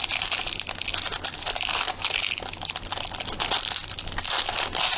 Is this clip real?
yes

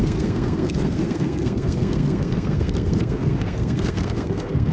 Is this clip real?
no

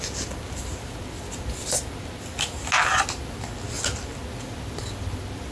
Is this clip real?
yes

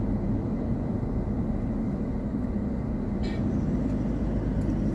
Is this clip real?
yes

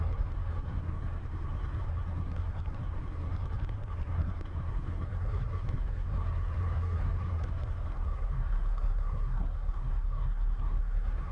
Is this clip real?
no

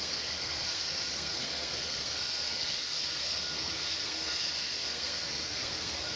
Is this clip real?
no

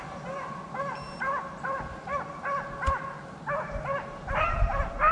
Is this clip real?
yes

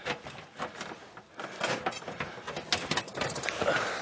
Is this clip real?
yes